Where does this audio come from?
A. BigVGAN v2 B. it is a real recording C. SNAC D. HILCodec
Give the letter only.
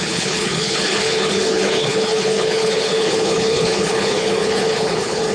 D